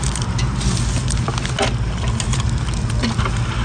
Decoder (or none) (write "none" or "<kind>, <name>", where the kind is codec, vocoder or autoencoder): none